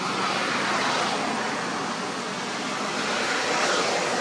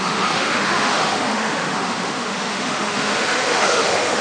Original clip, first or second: first